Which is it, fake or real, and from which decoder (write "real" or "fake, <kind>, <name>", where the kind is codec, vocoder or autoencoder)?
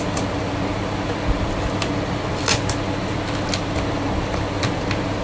fake, vocoder, BigVGAN v2